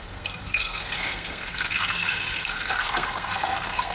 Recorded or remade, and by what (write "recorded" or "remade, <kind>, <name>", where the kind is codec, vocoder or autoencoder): remade, codec, SNAC